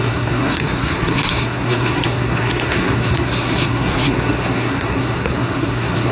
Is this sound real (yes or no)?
no